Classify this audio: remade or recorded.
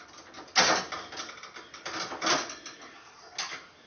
recorded